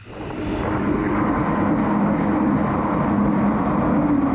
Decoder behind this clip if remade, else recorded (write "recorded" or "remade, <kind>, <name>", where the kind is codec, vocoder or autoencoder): recorded